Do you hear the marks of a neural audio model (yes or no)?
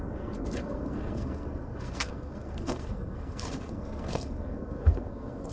yes